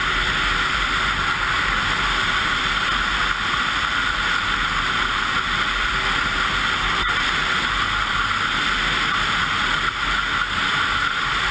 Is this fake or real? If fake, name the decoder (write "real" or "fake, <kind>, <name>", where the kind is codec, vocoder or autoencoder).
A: real